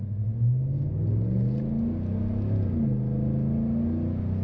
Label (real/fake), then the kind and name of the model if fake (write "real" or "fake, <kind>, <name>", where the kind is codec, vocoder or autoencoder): real